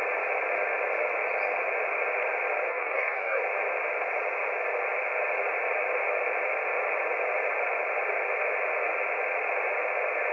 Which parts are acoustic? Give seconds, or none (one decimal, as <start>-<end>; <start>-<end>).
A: 0.0-2.7; 3.4-10.3